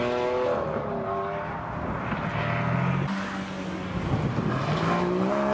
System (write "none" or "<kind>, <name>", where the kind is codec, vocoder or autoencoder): none